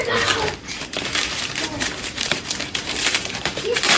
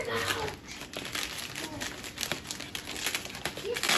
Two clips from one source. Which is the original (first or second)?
second